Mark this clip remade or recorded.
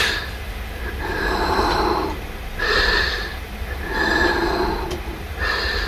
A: recorded